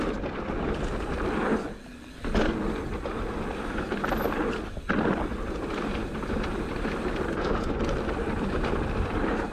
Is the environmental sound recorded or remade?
recorded